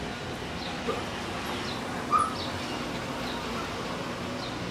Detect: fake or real real